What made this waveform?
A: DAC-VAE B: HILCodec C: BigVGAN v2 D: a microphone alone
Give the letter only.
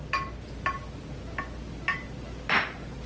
D